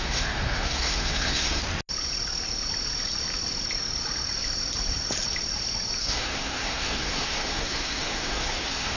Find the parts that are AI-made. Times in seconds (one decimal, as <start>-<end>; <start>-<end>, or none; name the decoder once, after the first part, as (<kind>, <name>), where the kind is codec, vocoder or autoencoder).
0.0-1.6 (codec, SNAC); 6.0-9.0